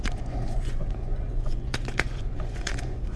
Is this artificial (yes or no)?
yes